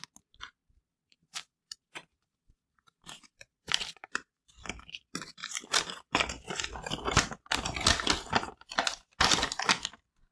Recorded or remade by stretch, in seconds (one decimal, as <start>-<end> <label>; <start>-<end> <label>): 0.0-0.6 recorded; 0.6-4.3 remade; 4.3-10.3 recorded